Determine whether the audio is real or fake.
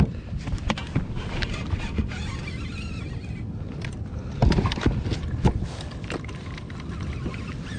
real